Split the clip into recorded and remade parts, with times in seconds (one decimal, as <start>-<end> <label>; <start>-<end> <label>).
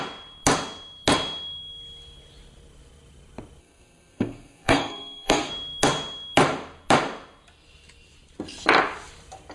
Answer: 0.0-3.6 recorded; 3.6-5.5 remade; 5.5-9.5 recorded